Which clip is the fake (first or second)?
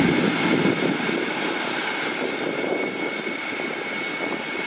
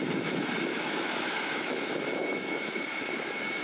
second